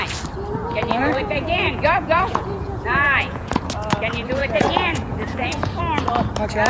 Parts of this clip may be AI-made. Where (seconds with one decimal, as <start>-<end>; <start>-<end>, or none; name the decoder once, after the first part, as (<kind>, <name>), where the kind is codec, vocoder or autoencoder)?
1.0-3.6 (vocoder, Vocos); 4.4-5.8